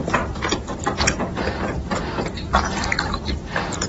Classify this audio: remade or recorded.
remade